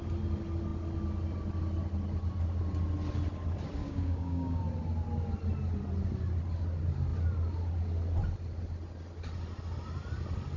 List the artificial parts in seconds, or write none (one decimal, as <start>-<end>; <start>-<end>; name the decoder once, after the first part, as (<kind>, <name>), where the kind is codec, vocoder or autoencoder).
3.8-4.6 (codec, DAC)